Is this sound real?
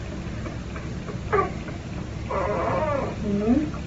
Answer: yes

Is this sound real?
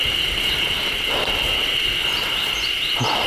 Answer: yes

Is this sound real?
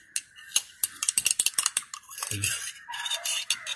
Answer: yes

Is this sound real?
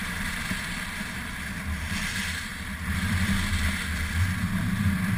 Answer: yes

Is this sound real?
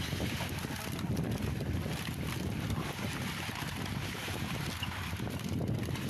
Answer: no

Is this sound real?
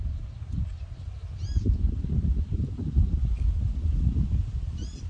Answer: yes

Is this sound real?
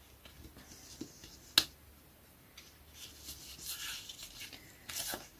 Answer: yes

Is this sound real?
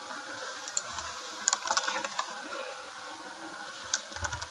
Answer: no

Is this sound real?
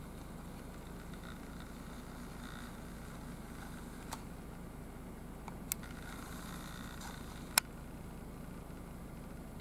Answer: yes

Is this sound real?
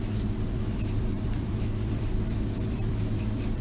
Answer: no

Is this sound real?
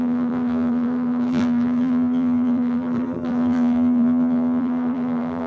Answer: no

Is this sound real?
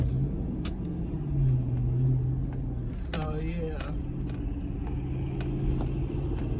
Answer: yes